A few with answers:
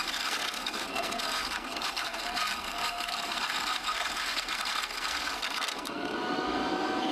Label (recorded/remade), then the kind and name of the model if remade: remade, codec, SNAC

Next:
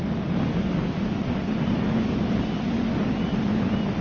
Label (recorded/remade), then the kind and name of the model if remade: recorded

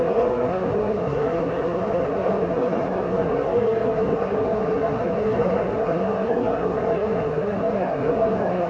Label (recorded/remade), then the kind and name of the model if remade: remade, codec, SNAC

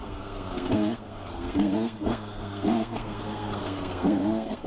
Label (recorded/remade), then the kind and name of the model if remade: remade, codec, SNAC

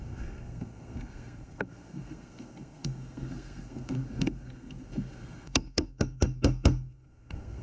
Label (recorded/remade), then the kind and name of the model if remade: remade, codec, SNAC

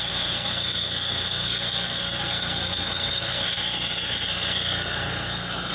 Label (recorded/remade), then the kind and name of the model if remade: remade, codec, SNAC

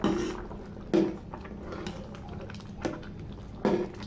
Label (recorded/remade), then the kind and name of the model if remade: recorded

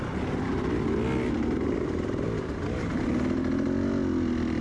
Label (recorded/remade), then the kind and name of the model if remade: recorded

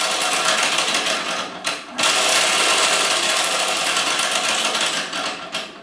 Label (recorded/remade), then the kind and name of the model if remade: recorded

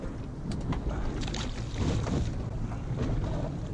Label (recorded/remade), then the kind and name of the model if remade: recorded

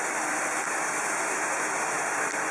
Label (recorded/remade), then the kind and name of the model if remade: recorded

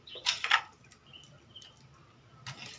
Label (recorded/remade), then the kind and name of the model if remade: recorded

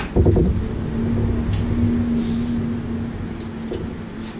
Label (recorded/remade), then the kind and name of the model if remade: recorded